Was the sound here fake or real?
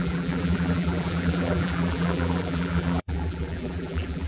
fake